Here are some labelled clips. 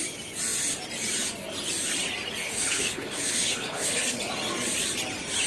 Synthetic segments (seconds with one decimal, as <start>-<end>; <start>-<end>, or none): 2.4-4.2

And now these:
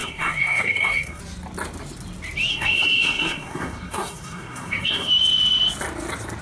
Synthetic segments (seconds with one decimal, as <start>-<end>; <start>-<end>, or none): 0.0-1.2; 2.5-5.1

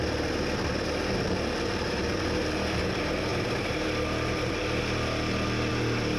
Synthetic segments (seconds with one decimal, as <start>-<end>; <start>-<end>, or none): none

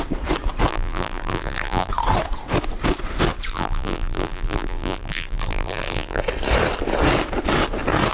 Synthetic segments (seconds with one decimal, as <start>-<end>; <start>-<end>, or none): 0.7-1.9; 3.5-6.2

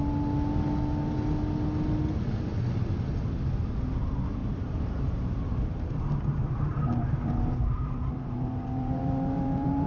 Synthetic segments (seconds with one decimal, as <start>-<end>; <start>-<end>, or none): 4.4-9.9